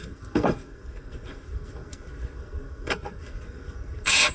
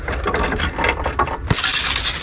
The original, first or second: second